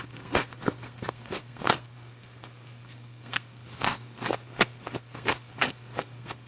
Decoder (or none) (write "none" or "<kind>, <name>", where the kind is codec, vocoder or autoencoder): codec, SNAC